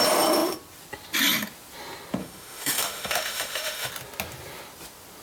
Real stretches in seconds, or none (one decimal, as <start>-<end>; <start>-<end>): 0.0-2.2; 3.9-5.2